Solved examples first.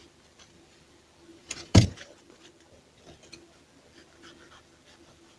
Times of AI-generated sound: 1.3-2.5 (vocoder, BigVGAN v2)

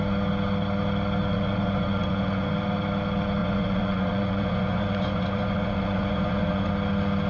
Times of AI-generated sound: 1.3-2.5 (vocoder, Vocos); 3.4-6.7

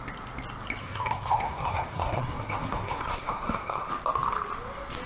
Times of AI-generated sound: 0.8-3.9 (codec, SNAC)